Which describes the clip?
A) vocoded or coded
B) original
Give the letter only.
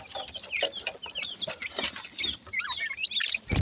B